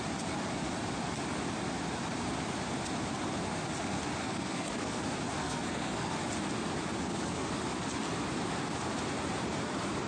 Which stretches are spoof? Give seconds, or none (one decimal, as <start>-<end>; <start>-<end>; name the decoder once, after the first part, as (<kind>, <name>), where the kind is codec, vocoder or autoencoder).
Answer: 4.2-5.0 (codec, SNAC); 5.4-6.1; 7.0-7.5